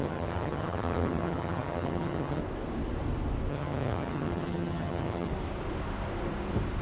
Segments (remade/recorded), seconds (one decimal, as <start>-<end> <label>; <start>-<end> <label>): 0.0-2.4 remade; 2.4-3.5 recorded; 3.5-5.3 remade; 5.3-6.8 recorded